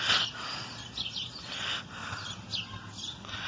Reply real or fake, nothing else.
real